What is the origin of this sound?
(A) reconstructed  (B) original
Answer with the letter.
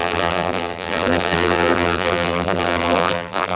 A